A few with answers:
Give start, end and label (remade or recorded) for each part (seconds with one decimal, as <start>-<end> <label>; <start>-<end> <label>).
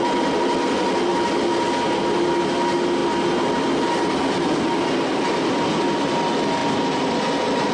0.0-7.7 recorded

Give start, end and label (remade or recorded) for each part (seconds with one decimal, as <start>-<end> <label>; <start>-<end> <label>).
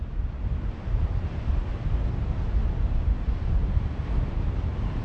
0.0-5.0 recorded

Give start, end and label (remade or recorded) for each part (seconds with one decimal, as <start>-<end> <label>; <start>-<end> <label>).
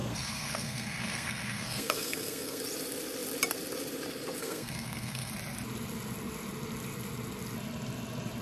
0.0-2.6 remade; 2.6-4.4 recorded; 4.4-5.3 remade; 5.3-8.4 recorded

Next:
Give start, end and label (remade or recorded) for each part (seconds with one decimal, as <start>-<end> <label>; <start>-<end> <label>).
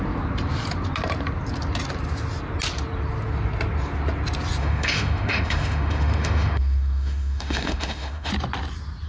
0.0-4.6 recorded; 4.6-8.3 remade; 8.3-9.1 recorded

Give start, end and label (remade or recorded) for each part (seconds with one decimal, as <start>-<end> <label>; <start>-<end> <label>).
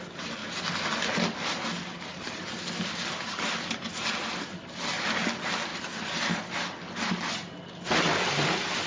0.0-5.7 recorded; 5.7-6.6 remade; 6.6-8.9 recorded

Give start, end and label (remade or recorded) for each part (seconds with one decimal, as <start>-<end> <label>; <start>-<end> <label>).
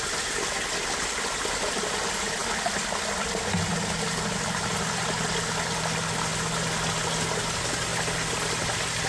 0.0-9.1 recorded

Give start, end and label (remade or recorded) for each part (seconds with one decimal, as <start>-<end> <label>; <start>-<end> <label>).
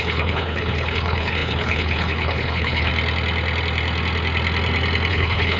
0.0-2.9 remade; 2.9-5.1 recorded; 5.1-5.6 remade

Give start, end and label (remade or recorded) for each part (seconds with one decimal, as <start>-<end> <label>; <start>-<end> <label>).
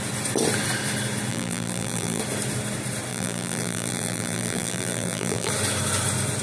0.0-1.3 recorded; 1.3-2.2 remade; 2.2-3.1 recorded; 3.1-5.5 remade; 5.5-6.4 recorded